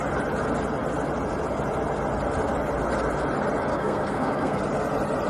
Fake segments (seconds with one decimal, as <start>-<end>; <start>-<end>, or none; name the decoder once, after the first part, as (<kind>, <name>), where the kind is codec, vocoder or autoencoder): 3.7-4.6 (codec, SNAC)